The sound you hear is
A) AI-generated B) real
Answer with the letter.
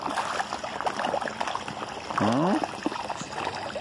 B